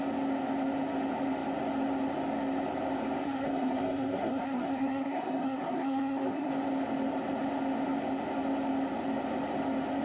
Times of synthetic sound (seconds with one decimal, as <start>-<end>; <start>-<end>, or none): 3.2-6.5